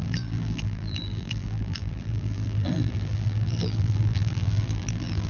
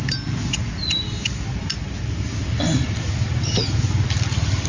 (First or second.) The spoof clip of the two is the first